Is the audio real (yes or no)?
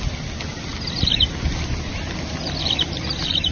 yes